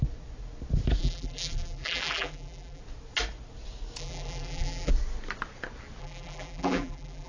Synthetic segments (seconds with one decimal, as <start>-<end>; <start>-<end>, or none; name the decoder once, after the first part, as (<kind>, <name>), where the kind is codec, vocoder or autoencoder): 1.0-2.8 (vocoder, BigVGAN v2); 4.0-4.9; 6.0-7.3